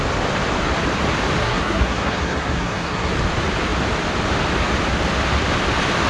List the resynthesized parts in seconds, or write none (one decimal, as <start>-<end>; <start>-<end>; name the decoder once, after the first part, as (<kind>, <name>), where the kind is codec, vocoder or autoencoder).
1.4-3.1 (codec, SNAC)